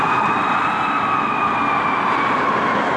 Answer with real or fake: real